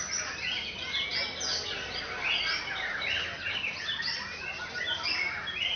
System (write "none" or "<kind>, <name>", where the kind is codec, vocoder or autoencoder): none